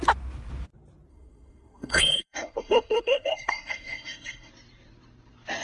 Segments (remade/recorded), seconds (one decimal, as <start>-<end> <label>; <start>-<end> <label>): 0.0-1.1 recorded; 1.1-4.5 remade; 4.5-5.6 recorded